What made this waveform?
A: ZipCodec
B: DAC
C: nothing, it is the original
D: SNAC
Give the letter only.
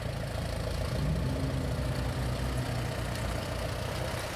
C